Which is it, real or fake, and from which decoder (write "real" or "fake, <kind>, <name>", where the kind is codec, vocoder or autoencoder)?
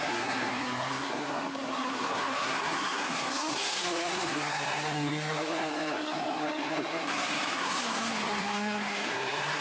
fake, codec, SNAC